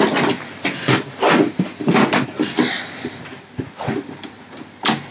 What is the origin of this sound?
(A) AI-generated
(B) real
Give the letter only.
B